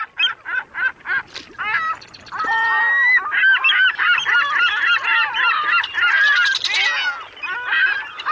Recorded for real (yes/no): yes